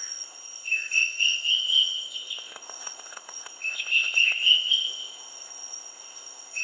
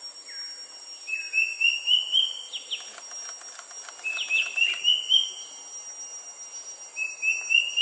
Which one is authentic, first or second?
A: second